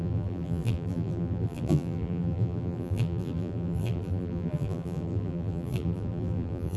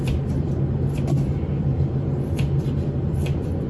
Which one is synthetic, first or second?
first